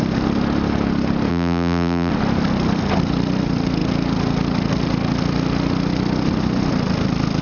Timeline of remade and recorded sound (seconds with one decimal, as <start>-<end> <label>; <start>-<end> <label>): 0.0-1.3 recorded; 1.3-2.1 remade; 2.1-7.4 recorded